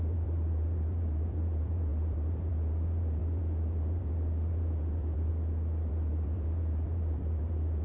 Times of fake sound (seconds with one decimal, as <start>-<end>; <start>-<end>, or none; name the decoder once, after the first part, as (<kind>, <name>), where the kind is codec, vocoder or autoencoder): 0.0-5.3 (vocoder, BigVGAN v2); 5.9-7.8